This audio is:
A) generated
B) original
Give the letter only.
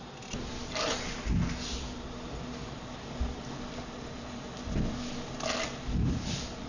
B